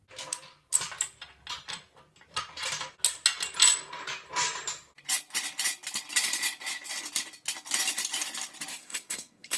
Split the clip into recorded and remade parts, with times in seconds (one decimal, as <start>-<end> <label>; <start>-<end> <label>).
0.0-8.7 recorded; 8.7-9.6 remade